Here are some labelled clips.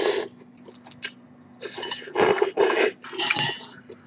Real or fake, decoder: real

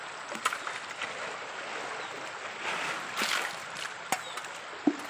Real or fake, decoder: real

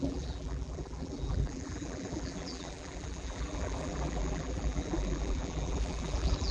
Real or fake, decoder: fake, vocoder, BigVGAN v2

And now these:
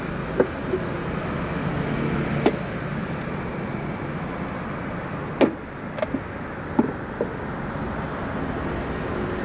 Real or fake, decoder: real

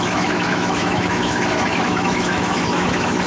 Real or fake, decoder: fake, autoencoder, DAC-VAE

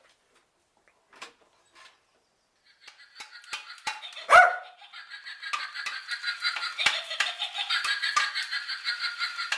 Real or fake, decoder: real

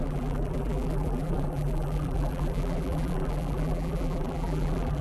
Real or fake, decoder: fake, vocoder, BigVGAN v2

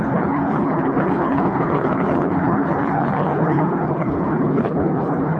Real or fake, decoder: fake, codec, HILCodec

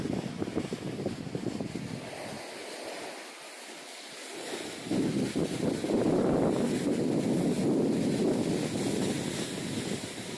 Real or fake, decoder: real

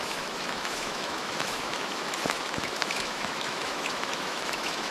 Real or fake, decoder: fake, autoencoder, DAC-VAE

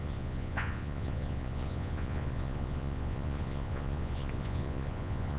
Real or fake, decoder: fake, vocoder, Vocos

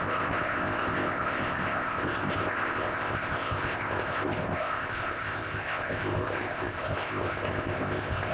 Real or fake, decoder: fake, codec, ZipCodec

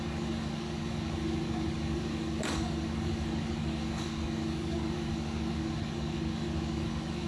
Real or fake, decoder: fake, codec, DAC